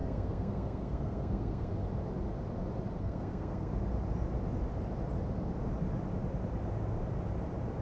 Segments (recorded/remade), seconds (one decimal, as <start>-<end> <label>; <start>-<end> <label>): 0.0-1.7 remade; 1.7-3.0 recorded; 3.0-3.7 remade; 3.7-7.8 recorded